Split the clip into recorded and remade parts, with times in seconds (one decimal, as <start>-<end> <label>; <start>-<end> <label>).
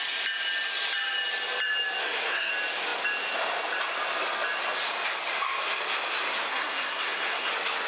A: 0.0-2.0 recorded; 2.0-2.5 remade; 2.5-6.5 recorded; 6.5-7.5 remade; 7.5-7.9 recorded